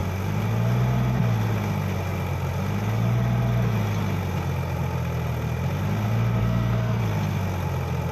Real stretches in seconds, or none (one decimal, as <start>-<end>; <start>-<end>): 0.0-6.4; 7.0-8.1